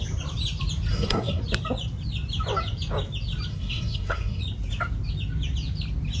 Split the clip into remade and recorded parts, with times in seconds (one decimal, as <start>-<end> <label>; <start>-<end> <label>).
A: 0.0-0.9 recorded; 0.9-1.4 remade; 1.4-3.5 recorded; 3.5-4.4 remade; 4.4-6.2 recorded